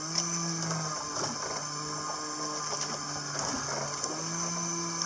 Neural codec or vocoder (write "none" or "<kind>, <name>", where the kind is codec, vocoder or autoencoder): none